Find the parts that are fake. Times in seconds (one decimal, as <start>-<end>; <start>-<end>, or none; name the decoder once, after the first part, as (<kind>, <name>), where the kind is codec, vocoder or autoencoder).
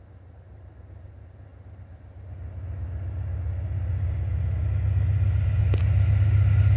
none